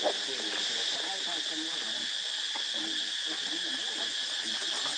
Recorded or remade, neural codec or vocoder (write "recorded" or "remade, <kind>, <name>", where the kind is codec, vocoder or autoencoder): recorded